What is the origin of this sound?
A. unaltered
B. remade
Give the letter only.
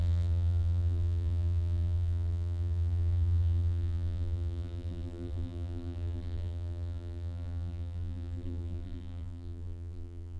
B